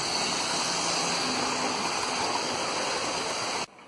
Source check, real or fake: real